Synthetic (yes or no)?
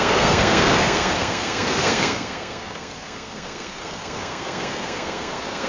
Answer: yes